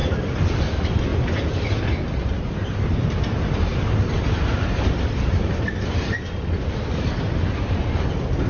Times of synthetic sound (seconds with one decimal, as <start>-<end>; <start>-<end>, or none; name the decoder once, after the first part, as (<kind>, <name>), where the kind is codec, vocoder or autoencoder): 0.0-0.6 (vocoder, BigVGAN v2); 1.1-1.8; 3.7-5.5